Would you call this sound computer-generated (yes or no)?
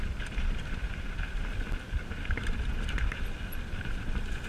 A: yes